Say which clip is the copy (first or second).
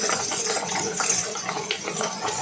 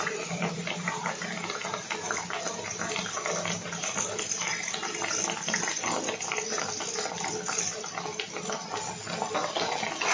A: first